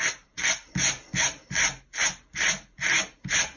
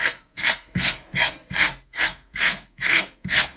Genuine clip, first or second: first